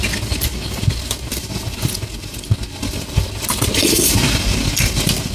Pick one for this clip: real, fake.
real